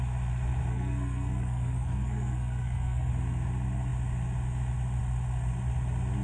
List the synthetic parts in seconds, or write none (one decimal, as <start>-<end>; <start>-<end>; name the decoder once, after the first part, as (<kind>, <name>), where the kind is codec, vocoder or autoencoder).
0.7-3.1 (codec, SNAC)